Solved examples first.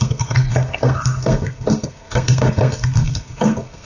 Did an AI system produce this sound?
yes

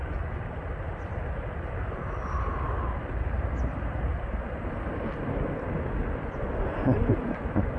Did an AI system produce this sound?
no